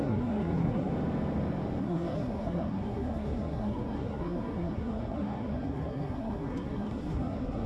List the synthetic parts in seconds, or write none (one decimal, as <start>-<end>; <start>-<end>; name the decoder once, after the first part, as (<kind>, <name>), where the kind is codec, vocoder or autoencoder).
0.0-0.9 (codec, SNAC); 1.8-7.7